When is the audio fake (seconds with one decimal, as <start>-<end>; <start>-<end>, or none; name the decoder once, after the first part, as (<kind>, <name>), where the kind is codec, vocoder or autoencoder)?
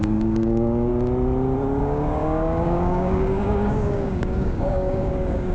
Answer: 0.0-0.9 (codec, DAC); 1.8-5.5